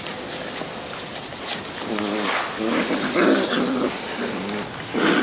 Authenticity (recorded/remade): recorded